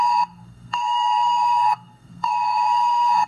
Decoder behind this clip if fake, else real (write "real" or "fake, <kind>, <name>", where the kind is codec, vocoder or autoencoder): fake, codec, SNAC